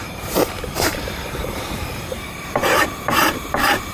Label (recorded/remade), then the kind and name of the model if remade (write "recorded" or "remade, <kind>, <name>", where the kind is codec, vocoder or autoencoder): remade, vocoder, BigVGAN v2